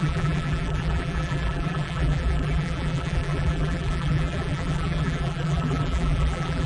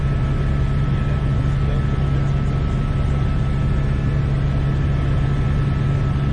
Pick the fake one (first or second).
first